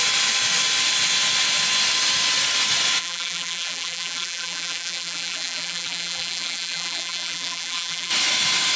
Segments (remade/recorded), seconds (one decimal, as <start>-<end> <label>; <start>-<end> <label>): 0.0-3.0 recorded; 3.0-8.1 remade; 8.1-8.8 recorded